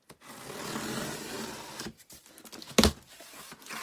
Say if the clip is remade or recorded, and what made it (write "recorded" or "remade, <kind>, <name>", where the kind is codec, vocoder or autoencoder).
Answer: recorded